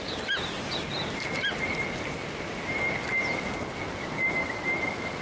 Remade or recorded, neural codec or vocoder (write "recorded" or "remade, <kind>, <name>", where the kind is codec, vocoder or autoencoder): recorded